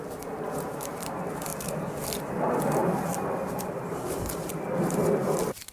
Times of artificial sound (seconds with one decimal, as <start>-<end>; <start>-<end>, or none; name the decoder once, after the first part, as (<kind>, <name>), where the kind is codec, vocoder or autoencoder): 2.8-4.5 (vocoder, BigVGAN v2)